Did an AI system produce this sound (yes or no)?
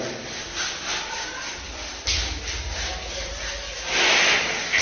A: no